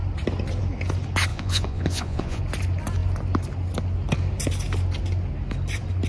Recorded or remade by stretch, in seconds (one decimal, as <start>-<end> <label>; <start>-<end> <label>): 0.0-1.3 recorded; 1.3-2.4 remade; 2.4-6.1 recorded